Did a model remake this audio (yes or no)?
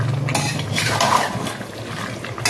no